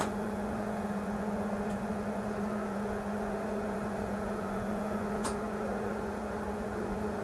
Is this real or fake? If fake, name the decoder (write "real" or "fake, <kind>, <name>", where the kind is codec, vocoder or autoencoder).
fake, vocoder, Vocos